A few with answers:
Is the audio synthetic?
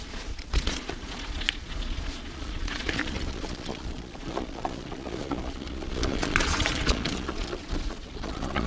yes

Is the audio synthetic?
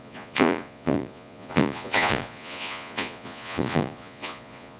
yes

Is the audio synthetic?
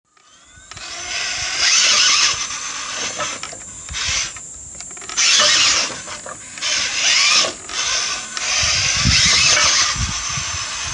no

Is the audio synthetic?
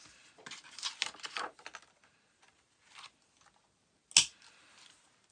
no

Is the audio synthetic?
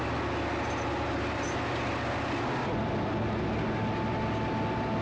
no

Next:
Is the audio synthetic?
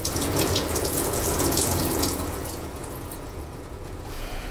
yes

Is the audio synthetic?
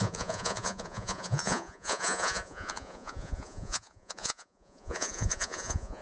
yes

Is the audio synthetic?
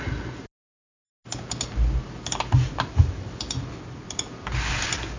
no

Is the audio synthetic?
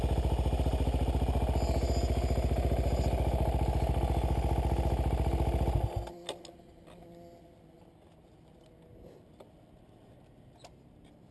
no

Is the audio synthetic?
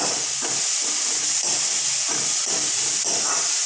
no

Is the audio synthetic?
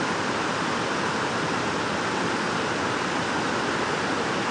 no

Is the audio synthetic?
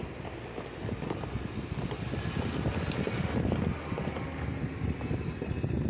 no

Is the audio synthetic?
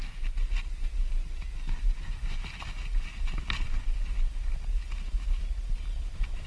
no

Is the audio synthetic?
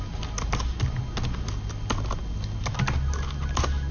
no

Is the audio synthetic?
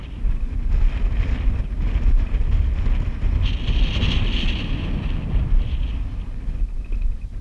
no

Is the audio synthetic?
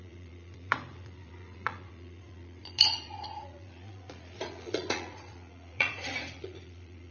yes